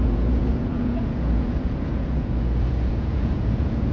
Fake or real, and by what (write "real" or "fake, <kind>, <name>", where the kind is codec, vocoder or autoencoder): fake, vocoder, Vocos